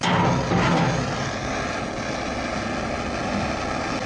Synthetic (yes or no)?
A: no